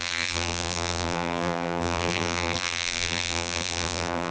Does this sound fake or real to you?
fake